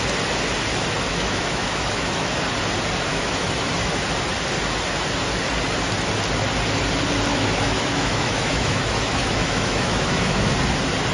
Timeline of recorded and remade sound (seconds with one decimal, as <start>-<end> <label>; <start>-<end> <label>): 0.0-1.1 recorded; 1.1-2.4 remade; 2.4-3.1 recorded; 3.1-3.7 remade; 3.7-7.3 recorded; 7.3-10.5 remade; 10.5-11.1 recorded